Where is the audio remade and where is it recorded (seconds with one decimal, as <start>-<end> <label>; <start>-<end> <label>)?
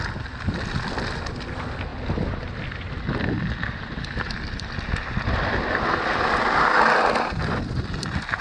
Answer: 0.0-8.4 recorded